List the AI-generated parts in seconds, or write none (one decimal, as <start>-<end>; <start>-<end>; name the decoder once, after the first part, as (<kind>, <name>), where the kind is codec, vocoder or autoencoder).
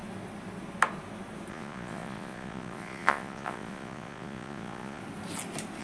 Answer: 1.5-5.0 (vocoder, Vocos)